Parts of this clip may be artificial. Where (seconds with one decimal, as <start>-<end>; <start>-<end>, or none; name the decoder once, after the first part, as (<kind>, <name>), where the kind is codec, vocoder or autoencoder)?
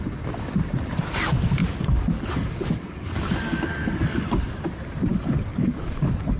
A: 1.6-4.2 (codec, DAC); 5.1-6.4